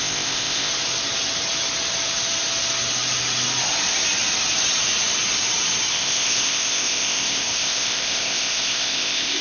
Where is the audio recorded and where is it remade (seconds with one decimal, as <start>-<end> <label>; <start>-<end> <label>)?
0.0-0.7 remade; 0.7-5.9 recorded; 5.9-9.4 remade